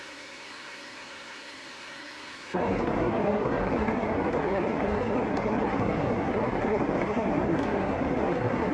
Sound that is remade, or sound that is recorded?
remade